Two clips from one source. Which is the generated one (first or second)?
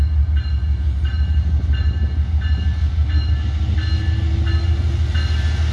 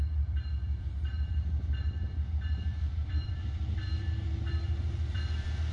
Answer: second